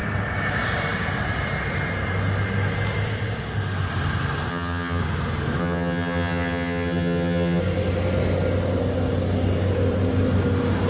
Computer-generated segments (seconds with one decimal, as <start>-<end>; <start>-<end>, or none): 4.5-5.0; 5.6-7.6